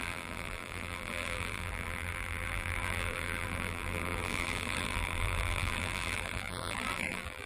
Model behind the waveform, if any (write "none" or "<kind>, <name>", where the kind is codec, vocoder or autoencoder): vocoder, BigVGAN v2